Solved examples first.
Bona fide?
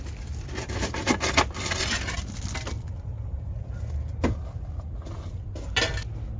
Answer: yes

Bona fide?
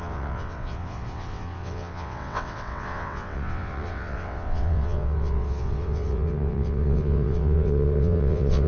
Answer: no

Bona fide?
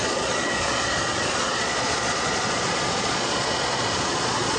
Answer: no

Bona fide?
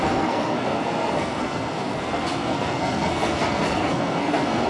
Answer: no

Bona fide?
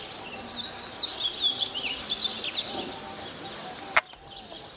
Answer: yes